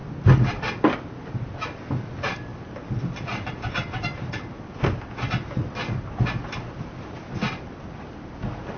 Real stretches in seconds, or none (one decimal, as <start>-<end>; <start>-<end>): 0.0-1.3; 2.5-7.0; 7.4-8.0